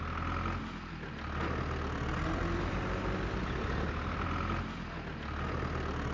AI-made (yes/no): no